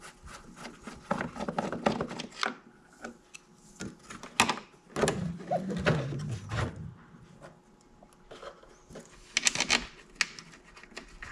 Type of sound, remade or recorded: recorded